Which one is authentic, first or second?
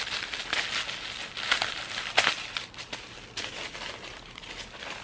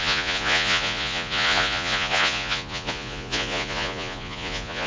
first